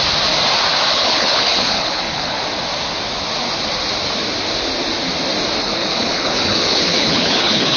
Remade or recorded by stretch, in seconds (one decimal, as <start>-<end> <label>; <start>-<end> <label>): 0.0-0.9 recorded; 0.9-2.4 remade; 2.4-5.6 recorded; 5.6-7.8 remade